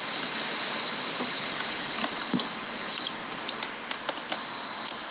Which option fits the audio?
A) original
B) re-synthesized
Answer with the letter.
A